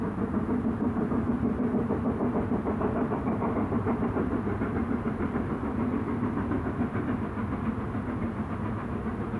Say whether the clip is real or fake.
real